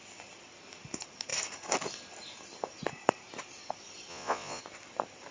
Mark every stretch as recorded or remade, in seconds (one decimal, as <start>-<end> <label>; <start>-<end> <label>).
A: 0.0-4.1 recorded; 4.1-4.6 remade; 4.6-5.3 recorded